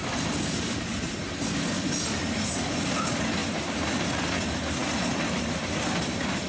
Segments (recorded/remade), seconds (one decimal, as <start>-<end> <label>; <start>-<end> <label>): 0.0-6.5 recorded